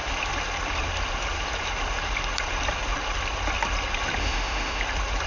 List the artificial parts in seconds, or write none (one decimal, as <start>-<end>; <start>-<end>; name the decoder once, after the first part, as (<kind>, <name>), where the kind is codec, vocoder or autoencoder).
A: 4.2-4.8 (autoencoder, DAC-VAE)